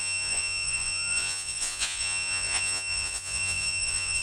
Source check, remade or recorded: remade